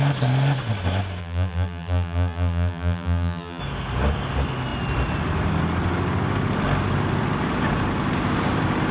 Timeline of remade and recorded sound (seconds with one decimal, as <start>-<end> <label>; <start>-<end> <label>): 0.0-1.2 recorded; 1.2-3.6 remade; 3.6-8.9 recorded